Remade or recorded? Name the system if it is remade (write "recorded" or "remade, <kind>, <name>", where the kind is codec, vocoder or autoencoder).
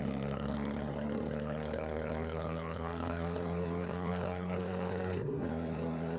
remade, codec, SNAC